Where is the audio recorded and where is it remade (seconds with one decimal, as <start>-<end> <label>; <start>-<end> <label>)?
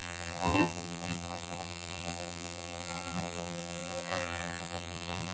0.0-5.3 remade